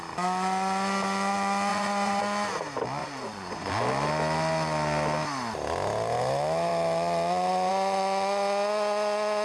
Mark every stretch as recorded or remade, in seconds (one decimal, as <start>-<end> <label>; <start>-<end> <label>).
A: 0.0-1.7 recorded; 1.7-2.2 remade; 2.2-3.0 recorded; 3.0-3.7 remade; 3.7-9.4 recorded